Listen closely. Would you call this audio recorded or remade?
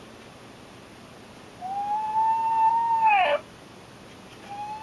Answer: recorded